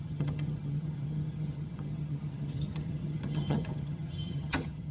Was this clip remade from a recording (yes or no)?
yes